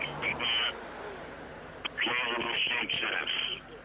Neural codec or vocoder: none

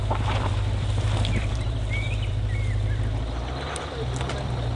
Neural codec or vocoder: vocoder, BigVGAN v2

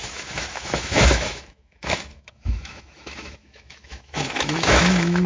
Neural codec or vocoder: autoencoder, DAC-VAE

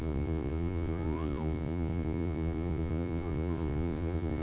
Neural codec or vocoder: vocoder, Vocos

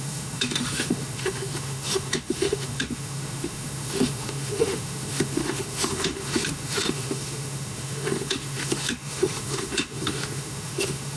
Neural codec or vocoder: autoencoder, DAC-VAE